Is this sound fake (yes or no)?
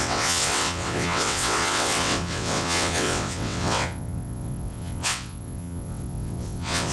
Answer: yes